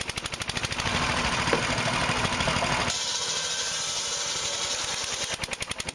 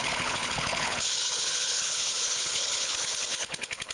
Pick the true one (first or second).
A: first